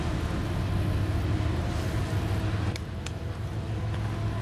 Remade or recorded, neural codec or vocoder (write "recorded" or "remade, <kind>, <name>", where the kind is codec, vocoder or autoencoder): recorded